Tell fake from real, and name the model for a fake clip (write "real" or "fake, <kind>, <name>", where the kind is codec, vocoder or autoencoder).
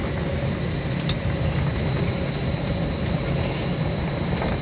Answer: real